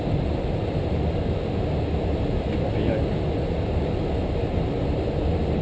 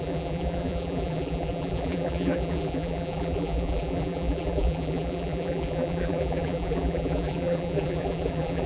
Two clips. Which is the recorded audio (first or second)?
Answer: first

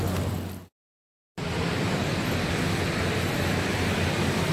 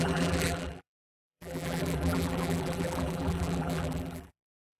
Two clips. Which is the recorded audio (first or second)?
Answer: first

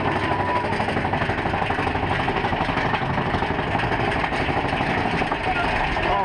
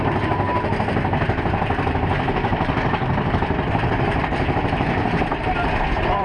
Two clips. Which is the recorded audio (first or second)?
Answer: first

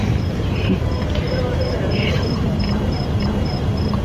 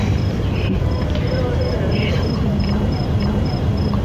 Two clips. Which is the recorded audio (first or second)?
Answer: second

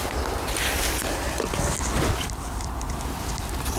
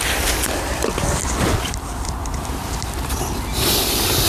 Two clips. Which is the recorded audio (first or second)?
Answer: first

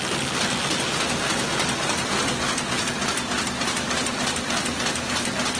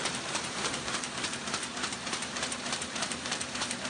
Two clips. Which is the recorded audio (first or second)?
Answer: first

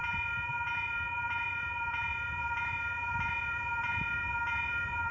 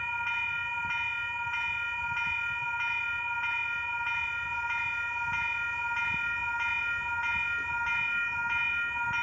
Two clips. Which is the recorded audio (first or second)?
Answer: second